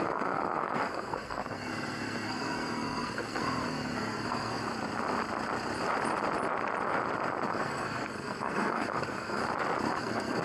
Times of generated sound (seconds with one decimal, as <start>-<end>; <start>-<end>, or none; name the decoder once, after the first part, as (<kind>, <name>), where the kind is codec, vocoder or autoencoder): 0.0-4.6 (codec, SNAC); 7.5-9.4; 10.0-10.4